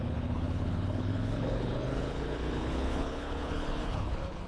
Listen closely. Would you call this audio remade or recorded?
remade